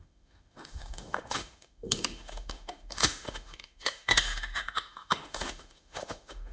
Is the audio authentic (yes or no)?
no